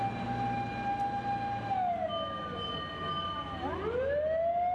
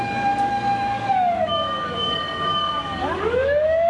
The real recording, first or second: first